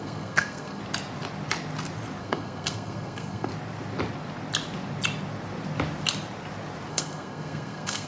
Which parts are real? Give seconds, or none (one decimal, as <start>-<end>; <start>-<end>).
0.8-2.2; 3.5-6.9